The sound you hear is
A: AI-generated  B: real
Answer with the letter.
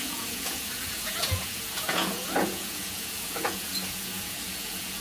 A